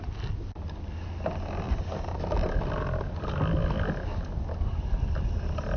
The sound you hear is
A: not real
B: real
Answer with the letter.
B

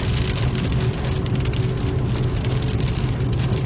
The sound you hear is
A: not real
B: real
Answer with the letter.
B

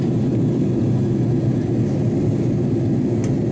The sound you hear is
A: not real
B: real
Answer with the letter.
B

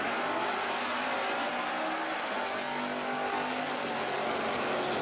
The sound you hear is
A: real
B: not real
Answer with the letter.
A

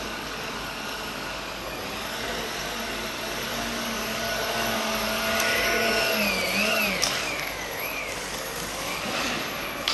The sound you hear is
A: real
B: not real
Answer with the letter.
B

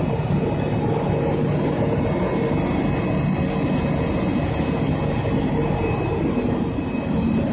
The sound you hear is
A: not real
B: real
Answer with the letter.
B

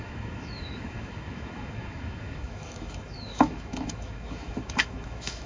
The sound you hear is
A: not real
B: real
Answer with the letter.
A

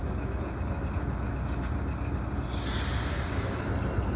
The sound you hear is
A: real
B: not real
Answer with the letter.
A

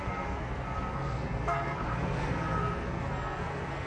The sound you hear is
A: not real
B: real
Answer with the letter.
A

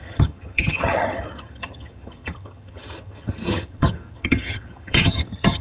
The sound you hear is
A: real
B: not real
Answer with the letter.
B